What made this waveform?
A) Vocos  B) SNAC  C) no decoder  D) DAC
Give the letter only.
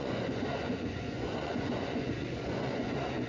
A